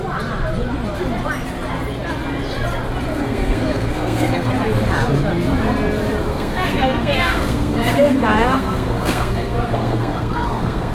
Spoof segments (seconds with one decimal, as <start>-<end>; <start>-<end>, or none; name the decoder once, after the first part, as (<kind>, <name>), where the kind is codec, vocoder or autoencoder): 3.1-4.5 (codec, SNAC); 6.3-10.9